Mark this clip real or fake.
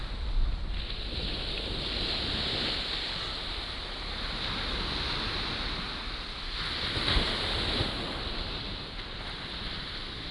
real